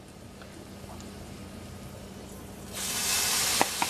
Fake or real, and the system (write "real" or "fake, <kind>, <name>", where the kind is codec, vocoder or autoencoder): real